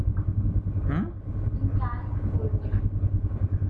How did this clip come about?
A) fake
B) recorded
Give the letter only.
B